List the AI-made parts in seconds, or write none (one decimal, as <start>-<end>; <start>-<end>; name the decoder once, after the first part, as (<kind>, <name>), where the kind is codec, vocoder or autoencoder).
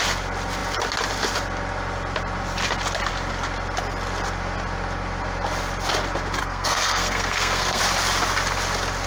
6.4-7.8 (codec, SNAC)